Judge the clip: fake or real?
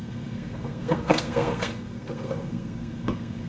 fake